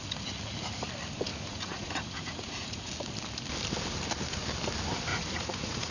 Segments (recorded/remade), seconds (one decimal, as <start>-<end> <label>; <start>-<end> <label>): 0.0-1.3 recorded; 1.3-2.9 remade; 2.9-5.1 recorded; 5.1-5.9 remade